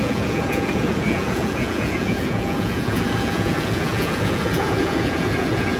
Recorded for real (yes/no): no